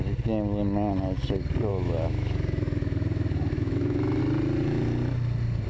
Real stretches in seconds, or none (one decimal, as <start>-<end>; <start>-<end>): 0.0-1.7; 4.2-5.7